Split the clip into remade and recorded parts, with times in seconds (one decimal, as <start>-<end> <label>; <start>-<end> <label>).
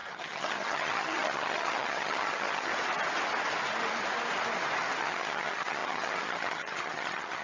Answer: 0.0-2.7 remade; 2.7-5.0 recorded; 5.0-7.4 remade